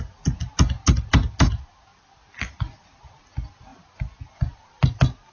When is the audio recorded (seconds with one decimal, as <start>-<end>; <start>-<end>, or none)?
0.0-5.3